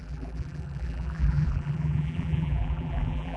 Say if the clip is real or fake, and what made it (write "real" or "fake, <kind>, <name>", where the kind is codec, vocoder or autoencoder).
fake, vocoder, BigVGAN v2